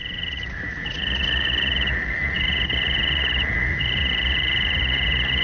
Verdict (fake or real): fake